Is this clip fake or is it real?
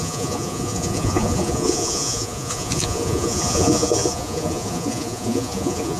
fake